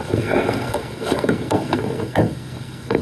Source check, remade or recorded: remade